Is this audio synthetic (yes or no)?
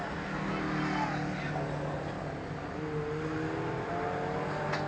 no